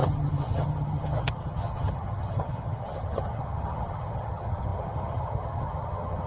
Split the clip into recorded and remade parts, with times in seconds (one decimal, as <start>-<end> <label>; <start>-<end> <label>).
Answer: 0.0-6.3 remade